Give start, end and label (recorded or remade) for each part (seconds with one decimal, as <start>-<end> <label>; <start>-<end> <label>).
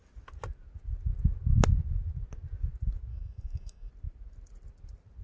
0.0-3.1 recorded; 3.1-3.9 remade; 3.9-5.2 recorded